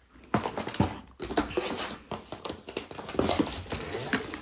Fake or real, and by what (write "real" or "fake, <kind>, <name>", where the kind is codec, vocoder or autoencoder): real